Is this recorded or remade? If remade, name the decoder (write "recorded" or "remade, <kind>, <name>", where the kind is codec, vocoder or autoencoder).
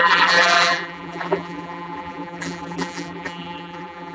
remade, vocoder, BigVGAN v2